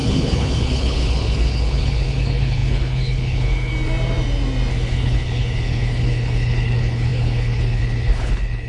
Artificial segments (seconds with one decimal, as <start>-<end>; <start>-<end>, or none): 0.0-3.7; 4.7-8.7

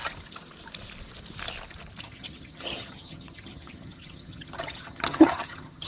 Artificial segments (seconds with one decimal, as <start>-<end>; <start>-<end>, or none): 2.0-5.9

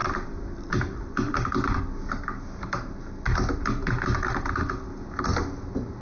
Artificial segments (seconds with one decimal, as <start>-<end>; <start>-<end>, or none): 0.0-1.8

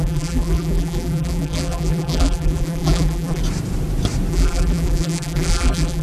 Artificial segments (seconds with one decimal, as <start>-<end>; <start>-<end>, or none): 0.0-3.4; 4.3-6.0

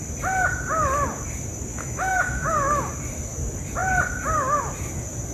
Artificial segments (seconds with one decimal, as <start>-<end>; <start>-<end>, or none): 1.7-2.5